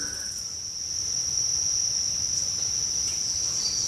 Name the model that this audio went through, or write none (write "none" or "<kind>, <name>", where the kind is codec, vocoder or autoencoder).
none